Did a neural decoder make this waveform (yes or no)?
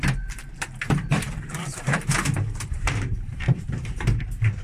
yes